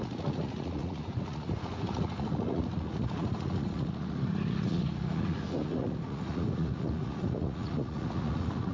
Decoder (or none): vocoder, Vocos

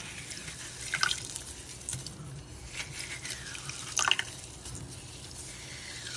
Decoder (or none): none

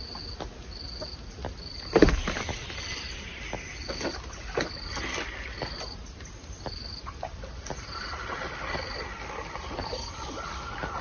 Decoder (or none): none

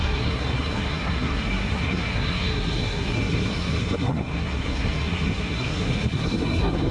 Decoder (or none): codec, SNAC